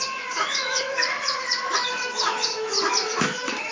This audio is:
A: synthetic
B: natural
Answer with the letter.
A